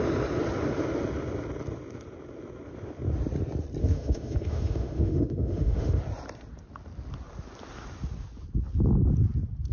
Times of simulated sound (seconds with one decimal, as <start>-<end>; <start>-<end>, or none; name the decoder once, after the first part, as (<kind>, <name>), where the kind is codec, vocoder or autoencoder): 3.8-6.0 (autoencoder, DAC-VAE)